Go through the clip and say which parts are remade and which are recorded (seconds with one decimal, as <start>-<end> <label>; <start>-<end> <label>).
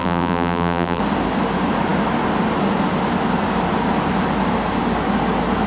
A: 0.0-1.0 remade; 1.0-5.7 recorded